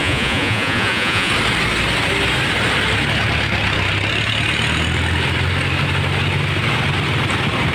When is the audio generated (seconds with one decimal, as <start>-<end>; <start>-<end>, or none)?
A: 0.0-1.3